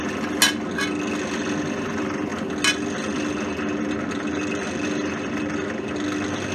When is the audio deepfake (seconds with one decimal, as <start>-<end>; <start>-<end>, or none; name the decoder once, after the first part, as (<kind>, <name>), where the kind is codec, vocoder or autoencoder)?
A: none